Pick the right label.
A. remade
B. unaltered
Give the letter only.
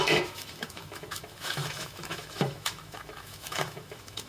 A